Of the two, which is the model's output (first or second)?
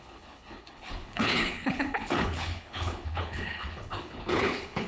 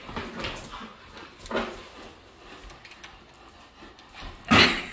first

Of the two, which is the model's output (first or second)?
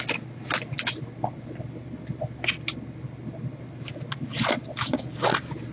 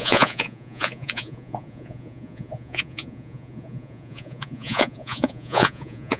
second